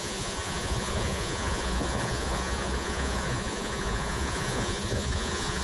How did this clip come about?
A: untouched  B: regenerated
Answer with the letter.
B